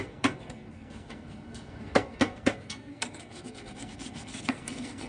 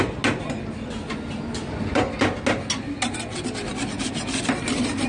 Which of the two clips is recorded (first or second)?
second